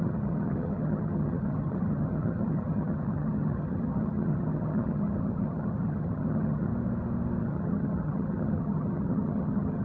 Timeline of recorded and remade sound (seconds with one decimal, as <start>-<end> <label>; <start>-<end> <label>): 0.0-6.7 remade; 6.7-7.4 recorded; 7.4-9.8 remade